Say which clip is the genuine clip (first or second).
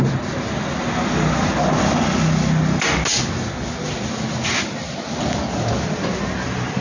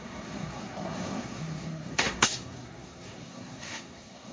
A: first